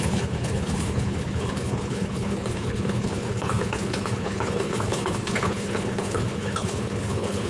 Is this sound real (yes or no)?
no